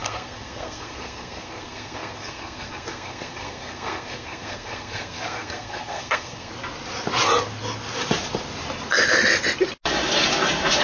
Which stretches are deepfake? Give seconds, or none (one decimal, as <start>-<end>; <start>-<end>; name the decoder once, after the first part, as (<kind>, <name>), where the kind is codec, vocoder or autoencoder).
0.0-6.5 (codec, SNAC)

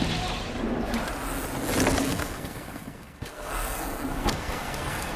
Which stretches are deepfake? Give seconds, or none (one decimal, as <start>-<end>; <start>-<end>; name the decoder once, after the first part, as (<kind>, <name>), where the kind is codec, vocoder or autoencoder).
2.0-5.2 (codec, SNAC)

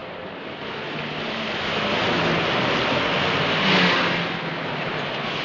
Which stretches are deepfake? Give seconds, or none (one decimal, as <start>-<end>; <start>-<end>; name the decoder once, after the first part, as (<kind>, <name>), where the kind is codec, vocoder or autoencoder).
none

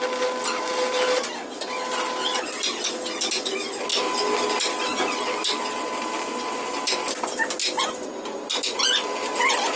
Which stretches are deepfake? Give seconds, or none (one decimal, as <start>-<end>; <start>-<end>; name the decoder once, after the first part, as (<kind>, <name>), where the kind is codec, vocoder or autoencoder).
none